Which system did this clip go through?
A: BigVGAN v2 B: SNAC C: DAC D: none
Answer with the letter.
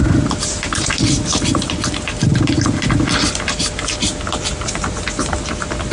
D